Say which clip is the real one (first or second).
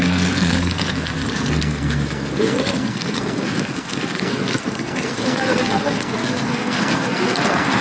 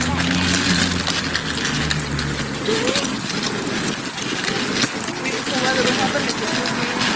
second